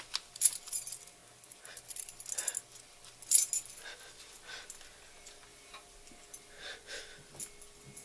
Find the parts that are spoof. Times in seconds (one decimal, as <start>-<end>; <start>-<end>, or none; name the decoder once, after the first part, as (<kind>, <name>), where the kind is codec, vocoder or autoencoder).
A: 1.2-1.8 (vocoder, BigVGAN v2); 5.5-6.0